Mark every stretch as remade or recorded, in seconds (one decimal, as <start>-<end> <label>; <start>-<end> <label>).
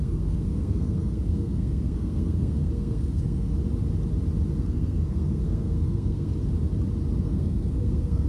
0.0-3.5 remade; 3.5-4.6 recorded; 4.6-6.3 remade; 6.3-7.2 recorded; 7.2-8.3 remade